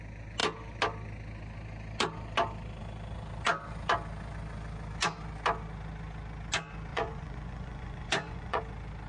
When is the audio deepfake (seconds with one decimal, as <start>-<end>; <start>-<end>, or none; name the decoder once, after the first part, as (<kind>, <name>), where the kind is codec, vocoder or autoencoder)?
6.9-8.6 (vocoder, Vocos)